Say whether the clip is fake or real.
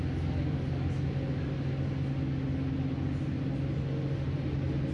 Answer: real